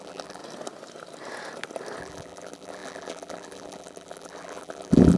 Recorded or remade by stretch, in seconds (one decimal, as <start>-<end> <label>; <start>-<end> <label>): 0.0-0.4 remade; 0.4-2.0 recorded; 2.0-5.2 remade